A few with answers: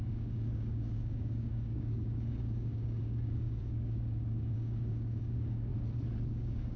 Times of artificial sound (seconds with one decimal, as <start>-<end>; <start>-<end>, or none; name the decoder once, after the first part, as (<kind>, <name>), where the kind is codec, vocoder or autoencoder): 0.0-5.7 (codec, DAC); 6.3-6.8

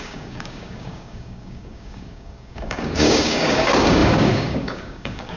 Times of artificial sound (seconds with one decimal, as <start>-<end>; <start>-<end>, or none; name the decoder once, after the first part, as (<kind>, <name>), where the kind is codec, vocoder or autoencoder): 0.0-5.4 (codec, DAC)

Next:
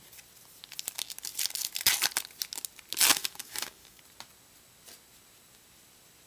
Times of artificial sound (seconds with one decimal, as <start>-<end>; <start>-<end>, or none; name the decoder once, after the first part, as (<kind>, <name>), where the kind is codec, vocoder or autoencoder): 3.1-4.0 (codec, DAC)